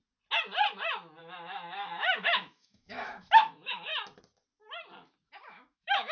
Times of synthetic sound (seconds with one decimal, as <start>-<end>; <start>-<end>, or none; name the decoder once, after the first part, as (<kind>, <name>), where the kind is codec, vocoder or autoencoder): 1.2-3.9 (autoencoder, DAC-VAE); 5.5-6.1